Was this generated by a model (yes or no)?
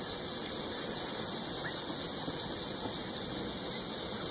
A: no